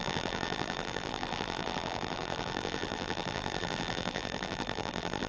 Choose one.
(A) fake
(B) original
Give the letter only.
A